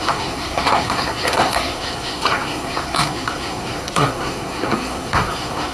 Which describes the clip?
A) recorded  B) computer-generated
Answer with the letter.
B